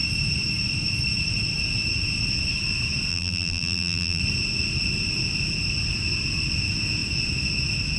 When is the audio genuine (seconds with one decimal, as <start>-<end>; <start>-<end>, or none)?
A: 0.0-3.1; 4.2-8.0